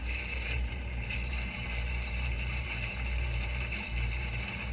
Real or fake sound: fake